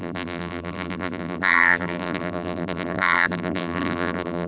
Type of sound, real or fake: fake